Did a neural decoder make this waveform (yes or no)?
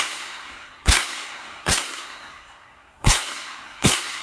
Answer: yes